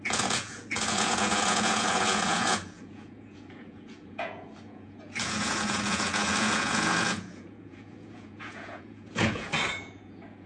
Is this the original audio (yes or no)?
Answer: no